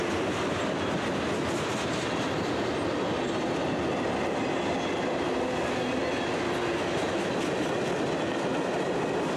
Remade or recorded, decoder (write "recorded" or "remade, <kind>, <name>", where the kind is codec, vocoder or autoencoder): recorded